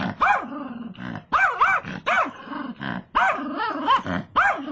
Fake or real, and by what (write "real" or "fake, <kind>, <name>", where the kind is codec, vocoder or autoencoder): real